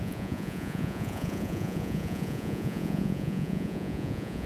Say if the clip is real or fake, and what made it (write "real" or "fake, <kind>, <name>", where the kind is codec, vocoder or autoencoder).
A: fake, vocoder, Vocos